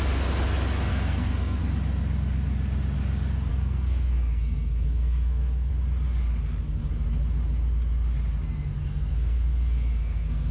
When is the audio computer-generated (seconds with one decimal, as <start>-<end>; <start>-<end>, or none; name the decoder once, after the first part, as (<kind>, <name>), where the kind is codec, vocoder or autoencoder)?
0.9-1.6 (codec, SNAC); 3.5-5.7; 8.8-10.5